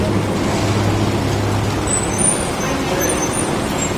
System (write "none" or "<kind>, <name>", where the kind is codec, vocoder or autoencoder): none